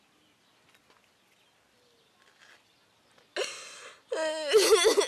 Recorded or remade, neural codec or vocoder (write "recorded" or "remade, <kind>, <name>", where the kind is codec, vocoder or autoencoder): recorded